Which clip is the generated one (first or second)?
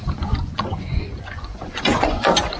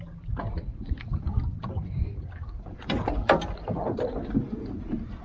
first